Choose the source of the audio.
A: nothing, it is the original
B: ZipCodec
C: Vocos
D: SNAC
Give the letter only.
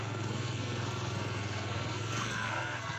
D